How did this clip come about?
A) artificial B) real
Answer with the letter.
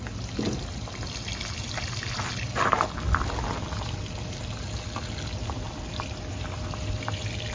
B